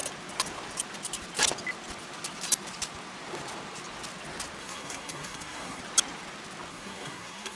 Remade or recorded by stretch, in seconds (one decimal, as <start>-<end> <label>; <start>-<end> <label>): 0.0-4.6 recorded; 4.6-5.8 remade; 5.8-6.7 recorded; 6.7-7.6 remade